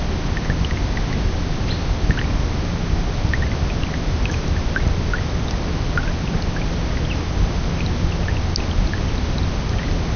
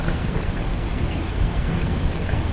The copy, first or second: second